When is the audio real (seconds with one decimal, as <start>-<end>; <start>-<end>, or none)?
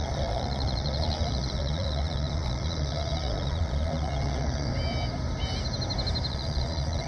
4.7-6.3